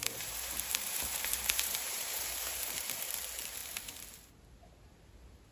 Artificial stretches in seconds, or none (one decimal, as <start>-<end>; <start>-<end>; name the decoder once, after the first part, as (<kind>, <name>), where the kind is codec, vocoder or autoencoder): 0.0-3.0 (vocoder, BigVGAN v2)